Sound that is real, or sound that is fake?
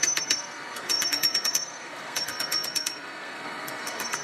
fake